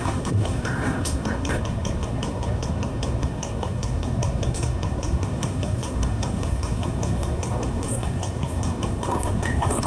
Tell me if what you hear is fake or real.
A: fake